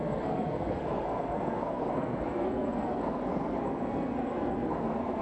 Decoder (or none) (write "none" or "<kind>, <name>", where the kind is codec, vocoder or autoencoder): codec, SNAC